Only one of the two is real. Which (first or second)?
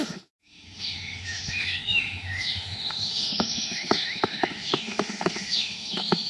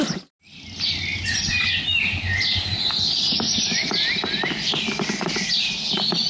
second